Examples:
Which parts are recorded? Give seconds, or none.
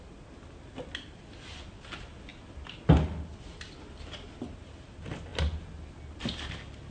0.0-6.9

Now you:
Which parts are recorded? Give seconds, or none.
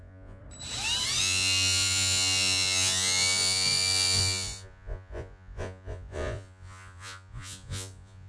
0.4-1.2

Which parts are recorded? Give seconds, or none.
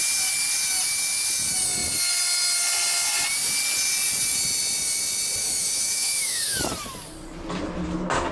0.0-5.4; 6.6-8.3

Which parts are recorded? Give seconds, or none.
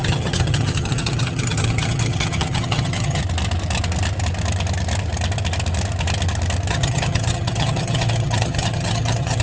3.2-6.7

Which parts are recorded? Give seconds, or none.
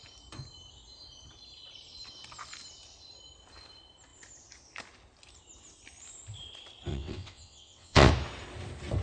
0.0-6.9; 8.1-9.0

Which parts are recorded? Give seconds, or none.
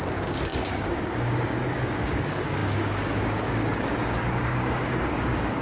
none